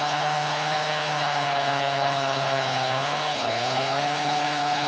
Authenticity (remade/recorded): remade